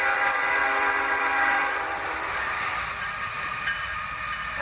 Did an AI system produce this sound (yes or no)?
yes